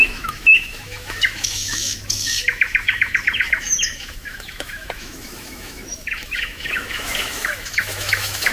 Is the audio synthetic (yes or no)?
yes